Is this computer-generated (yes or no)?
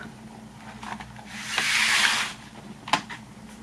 no